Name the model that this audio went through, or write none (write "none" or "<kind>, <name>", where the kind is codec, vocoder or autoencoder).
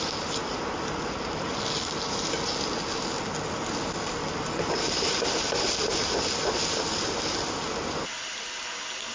none